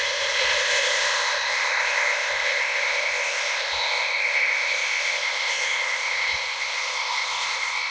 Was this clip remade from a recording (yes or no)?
yes